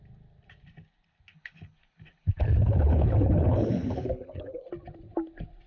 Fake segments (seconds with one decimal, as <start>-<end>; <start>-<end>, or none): 1.3-4.7